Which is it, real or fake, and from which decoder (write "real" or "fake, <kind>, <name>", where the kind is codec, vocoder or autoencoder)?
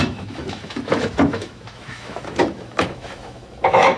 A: fake, autoencoder, DAC-VAE